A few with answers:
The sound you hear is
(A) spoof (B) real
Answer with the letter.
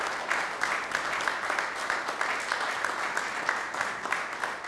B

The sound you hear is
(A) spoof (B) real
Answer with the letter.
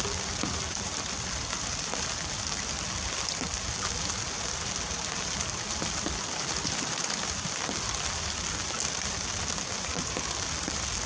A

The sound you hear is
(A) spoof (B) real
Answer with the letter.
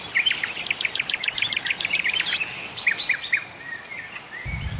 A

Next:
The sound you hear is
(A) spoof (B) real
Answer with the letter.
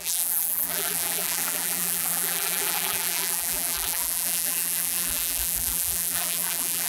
A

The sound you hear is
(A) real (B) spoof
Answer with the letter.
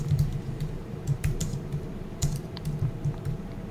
B